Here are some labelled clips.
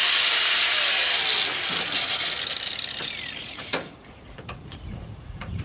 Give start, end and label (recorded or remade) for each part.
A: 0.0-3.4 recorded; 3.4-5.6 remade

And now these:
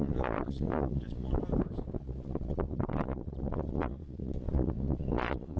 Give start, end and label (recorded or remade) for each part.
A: 0.0-1.4 remade; 1.4-1.9 recorded; 1.9-5.6 remade

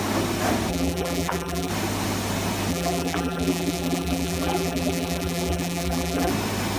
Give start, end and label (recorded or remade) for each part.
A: 0.0-0.7 recorded; 0.7-1.7 remade; 1.7-2.7 recorded; 2.7-6.3 remade; 6.3-6.8 recorded

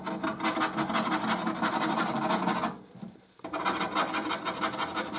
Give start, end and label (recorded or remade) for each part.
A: 0.0-5.2 recorded